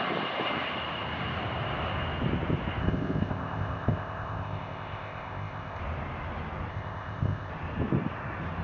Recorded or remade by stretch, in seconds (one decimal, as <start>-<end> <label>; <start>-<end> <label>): 0.0-2.8 recorded; 2.8-5.8 remade; 5.8-6.7 recorded; 6.7-7.5 remade; 7.5-8.6 recorded